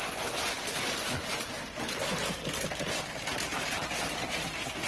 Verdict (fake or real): real